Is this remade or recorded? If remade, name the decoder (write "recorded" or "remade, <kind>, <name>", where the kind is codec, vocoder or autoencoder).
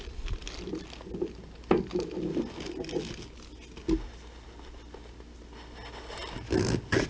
recorded